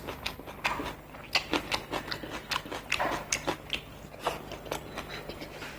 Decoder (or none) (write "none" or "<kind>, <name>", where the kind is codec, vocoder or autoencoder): none